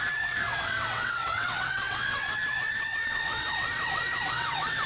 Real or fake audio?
fake